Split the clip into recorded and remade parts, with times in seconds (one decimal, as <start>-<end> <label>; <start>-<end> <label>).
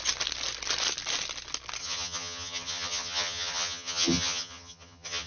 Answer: 0.0-1.8 recorded; 1.8-5.3 remade